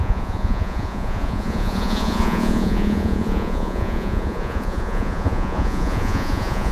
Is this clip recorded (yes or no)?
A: no